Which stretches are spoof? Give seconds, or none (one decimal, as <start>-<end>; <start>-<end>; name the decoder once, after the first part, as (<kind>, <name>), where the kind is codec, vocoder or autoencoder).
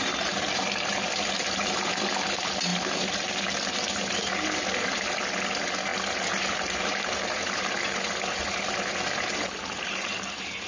none